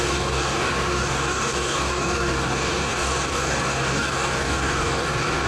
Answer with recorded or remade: remade